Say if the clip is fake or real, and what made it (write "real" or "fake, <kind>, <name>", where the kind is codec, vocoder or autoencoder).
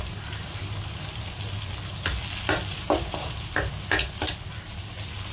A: real